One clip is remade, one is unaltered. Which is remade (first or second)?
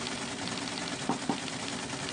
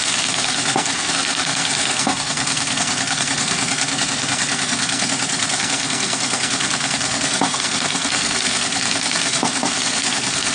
second